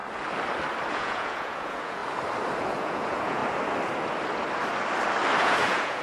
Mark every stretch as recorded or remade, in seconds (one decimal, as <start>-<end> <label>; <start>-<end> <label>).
0.0-0.9 recorded; 0.9-2.0 remade; 2.0-2.6 recorded; 2.6-3.4 remade; 3.4-5.4 recorded; 5.4-6.0 remade